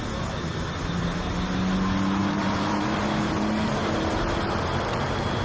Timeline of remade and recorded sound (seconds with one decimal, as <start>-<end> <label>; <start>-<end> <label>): 0.0-2.2 recorded; 2.2-5.4 remade